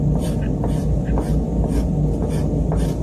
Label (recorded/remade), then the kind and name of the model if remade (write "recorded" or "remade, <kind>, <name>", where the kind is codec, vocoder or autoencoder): recorded